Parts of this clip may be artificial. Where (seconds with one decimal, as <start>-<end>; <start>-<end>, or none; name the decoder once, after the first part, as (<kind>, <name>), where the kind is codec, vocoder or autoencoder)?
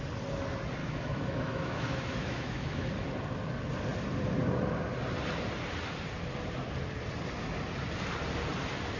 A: 0.8-2.9 (autoencoder, DAC-VAE)